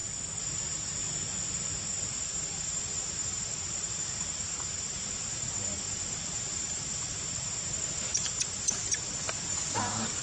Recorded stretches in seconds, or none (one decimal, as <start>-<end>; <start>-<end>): 0.0-2.3